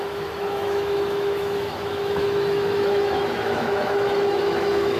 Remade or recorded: remade